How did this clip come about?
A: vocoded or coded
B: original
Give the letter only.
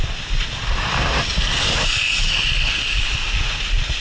B